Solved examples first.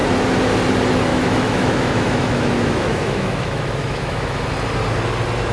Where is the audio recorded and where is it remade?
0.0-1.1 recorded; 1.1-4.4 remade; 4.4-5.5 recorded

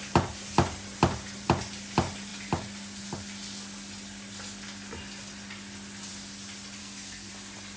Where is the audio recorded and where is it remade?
0.0-6.8 recorded; 6.8-7.3 remade; 7.3-7.8 recorded